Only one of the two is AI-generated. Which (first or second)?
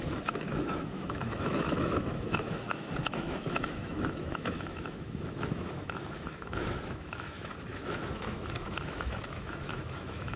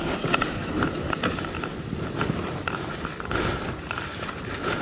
first